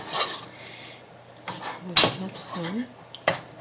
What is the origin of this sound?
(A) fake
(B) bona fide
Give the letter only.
B